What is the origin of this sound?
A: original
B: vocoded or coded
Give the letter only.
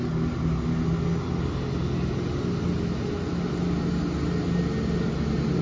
A